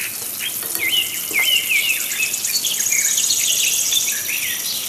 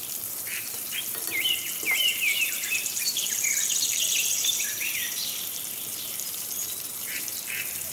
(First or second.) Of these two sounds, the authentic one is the first